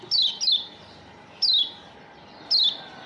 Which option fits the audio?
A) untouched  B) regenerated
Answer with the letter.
A